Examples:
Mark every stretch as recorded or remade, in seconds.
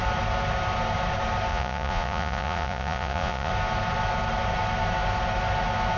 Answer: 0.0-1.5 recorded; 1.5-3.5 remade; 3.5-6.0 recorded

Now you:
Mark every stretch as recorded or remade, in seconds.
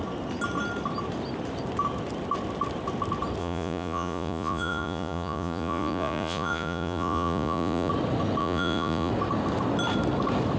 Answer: 0.0-3.4 recorded; 3.4-7.9 remade; 7.9-8.4 recorded; 8.4-9.1 remade; 9.1-10.6 recorded